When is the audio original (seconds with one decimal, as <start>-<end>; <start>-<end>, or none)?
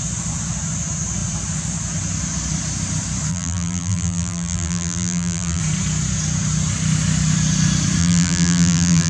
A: 0.0-3.3; 5.6-8.0